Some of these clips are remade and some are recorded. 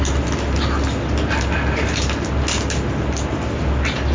recorded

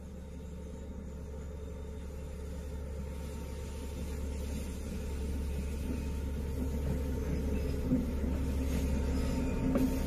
recorded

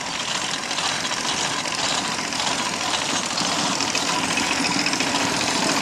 recorded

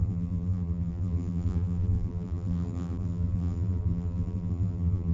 remade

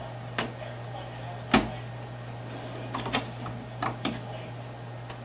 recorded